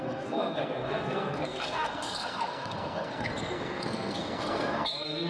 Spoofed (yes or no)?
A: yes